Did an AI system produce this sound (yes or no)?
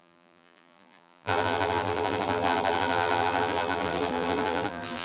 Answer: yes